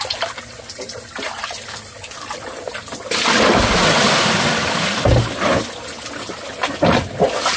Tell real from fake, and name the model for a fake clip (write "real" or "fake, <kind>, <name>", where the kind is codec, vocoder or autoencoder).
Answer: real